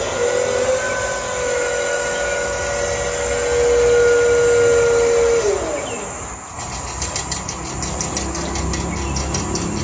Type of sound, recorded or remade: recorded